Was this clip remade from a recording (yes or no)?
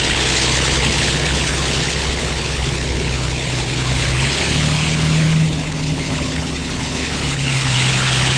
yes